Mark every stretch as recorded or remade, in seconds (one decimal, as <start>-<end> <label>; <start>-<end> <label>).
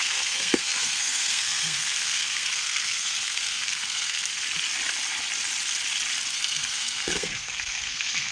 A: 0.0-4.3 remade; 4.3-6.3 recorded; 6.3-8.3 remade